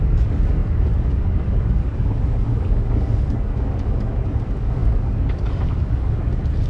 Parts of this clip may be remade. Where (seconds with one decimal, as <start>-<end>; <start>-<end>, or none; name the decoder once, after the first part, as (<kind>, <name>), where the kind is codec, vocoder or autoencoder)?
0.0-6.7 (codec, DAC)